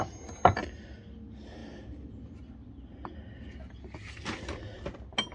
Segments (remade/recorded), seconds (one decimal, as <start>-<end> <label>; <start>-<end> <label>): 0.0-5.3 recorded